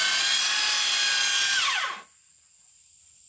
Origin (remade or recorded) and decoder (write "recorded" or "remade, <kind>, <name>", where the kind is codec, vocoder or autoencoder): recorded